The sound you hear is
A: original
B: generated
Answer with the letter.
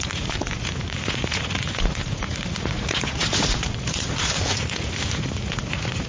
B